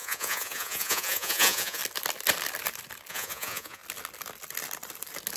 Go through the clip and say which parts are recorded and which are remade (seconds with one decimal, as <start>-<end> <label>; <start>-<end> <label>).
0.0-1.8 remade; 1.8-3.1 recorded; 3.1-3.8 remade; 3.8-5.4 recorded